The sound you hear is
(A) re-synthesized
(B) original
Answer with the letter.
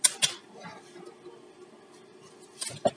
B